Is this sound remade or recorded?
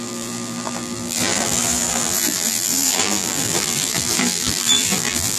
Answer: remade